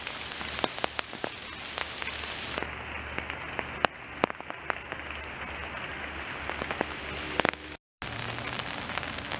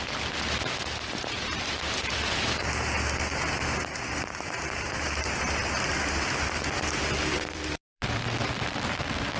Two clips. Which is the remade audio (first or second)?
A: second